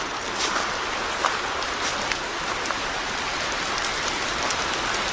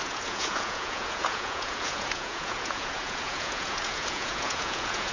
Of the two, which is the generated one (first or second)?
second